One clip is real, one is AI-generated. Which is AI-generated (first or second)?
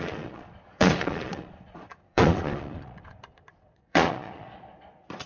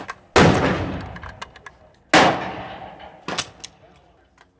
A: first